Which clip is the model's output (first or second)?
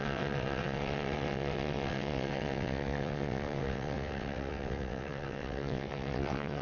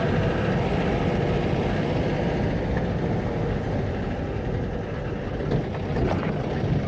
first